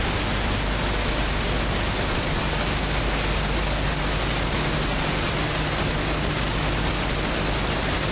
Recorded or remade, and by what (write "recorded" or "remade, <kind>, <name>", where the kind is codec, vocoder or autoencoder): recorded